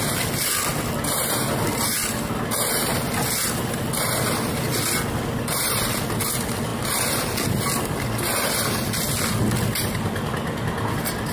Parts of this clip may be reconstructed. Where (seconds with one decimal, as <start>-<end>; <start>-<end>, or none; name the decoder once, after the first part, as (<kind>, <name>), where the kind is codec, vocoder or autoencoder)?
none